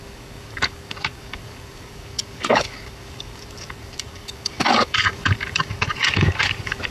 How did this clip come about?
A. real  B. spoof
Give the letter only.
B